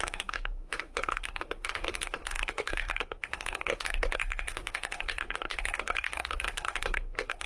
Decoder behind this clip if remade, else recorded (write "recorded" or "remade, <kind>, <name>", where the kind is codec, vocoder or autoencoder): remade, codec, SNAC